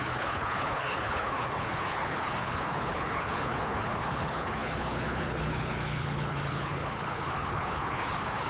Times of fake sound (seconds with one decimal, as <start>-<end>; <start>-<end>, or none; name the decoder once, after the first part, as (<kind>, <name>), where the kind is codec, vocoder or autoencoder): 0.0-8.5 (codec, HILCodec)